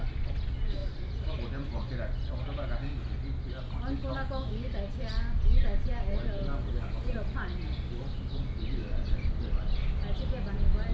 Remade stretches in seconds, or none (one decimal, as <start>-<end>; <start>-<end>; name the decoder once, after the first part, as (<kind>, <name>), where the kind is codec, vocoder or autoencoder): none